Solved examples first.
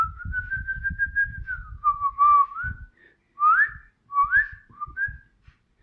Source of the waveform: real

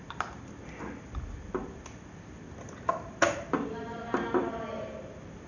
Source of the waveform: real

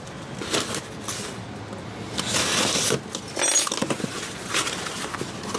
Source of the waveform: real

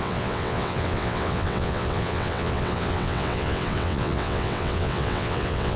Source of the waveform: fake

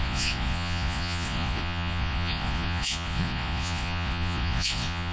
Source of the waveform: fake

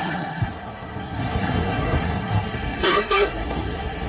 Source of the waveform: fake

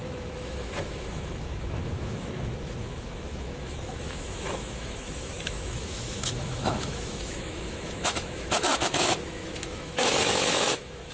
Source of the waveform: fake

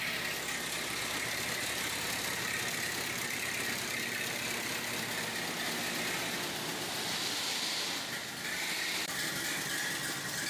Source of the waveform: real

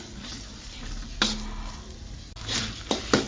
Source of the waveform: real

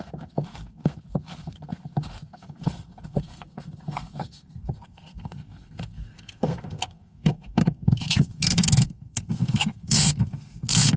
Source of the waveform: fake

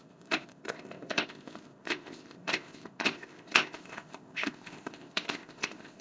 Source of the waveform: fake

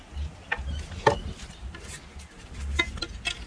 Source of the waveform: real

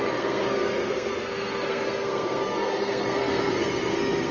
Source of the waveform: fake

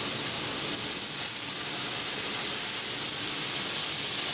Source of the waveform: real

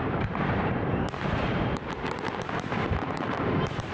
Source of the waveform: fake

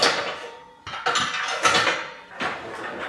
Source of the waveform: real